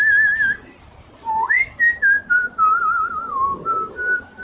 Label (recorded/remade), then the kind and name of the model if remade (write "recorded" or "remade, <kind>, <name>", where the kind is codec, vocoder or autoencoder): recorded